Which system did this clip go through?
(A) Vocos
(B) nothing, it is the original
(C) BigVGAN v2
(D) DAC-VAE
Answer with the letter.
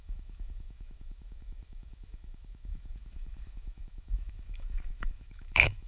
D